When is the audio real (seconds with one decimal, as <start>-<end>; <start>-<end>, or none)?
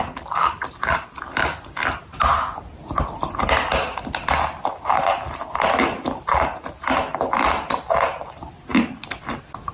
0.0-9.7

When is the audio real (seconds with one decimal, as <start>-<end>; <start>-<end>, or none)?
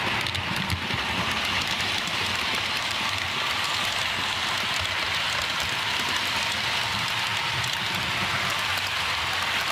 0.0-9.7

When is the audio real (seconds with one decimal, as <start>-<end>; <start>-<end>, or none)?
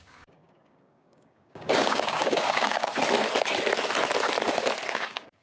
2.9-4.9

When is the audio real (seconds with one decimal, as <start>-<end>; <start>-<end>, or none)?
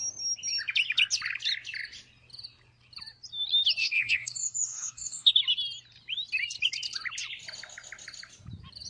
0.0-3.8; 5.3-8.9